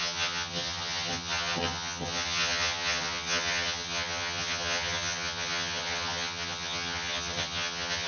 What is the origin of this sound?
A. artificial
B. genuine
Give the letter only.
A